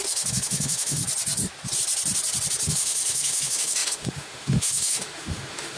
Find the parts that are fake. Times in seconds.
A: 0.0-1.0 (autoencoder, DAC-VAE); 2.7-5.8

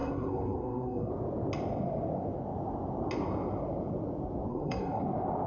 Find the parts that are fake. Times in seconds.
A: 0.0-1.1 (codec, SNAC); 4.5-5.0

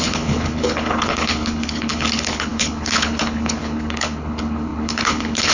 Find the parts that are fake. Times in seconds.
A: 0.0-5.5 (codec, HILCodec)

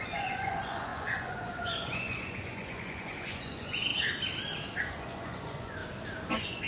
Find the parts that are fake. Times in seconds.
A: 0.0-3.9 (vocoder, Vocos); 4.8-5.8; 6.3-6.7

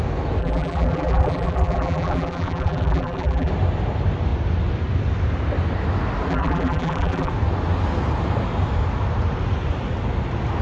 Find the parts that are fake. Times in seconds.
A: 0.4-3.5 (vocoder, BigVGAN v2); 6.3-7.3